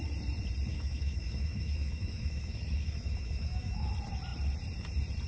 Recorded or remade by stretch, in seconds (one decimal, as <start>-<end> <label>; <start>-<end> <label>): 0.0-0.7 recorded; 0.7-3.9 remade; 3.9-5.3 recorded